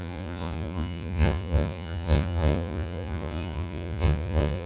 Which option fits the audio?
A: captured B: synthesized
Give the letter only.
B